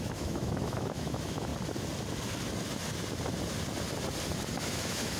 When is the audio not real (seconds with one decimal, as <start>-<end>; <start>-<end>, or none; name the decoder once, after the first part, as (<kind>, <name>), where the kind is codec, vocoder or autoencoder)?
0.0-1.5 (autoencoder, DAC-VAE); 4.6-5.2